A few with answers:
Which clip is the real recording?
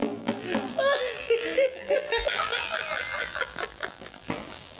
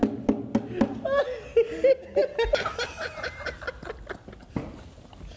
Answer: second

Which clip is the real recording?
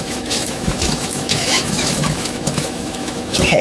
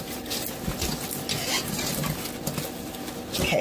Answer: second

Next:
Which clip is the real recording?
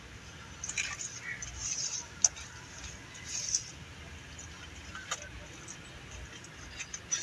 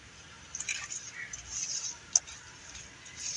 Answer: first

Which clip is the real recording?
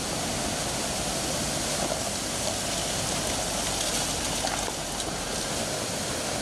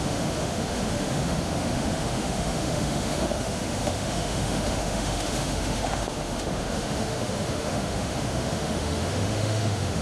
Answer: first